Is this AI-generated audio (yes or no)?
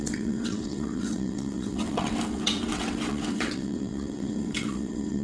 yes